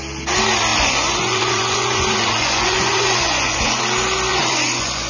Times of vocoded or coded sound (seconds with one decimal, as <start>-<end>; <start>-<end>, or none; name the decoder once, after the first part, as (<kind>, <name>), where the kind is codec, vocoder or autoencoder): 0.7-3.8 (vocoder, Vocos); 4.3-5.1